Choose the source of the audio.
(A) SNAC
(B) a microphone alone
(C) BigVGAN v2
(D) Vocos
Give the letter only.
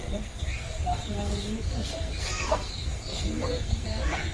A